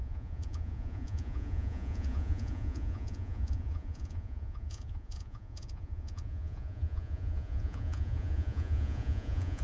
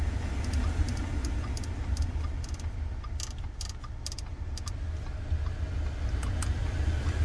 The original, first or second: second